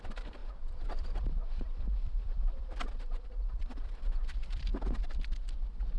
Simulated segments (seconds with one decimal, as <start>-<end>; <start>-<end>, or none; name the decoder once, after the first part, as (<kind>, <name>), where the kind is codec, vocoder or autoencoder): 0.0-4.7 (vocoder, BigVGAN v2)